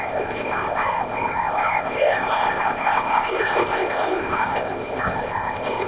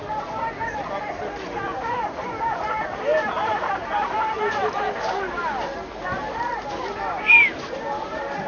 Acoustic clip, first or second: second